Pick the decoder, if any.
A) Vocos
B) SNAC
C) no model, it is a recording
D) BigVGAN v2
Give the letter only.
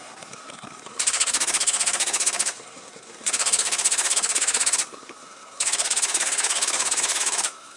B